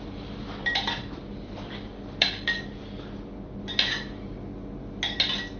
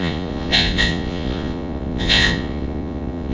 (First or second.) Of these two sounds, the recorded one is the first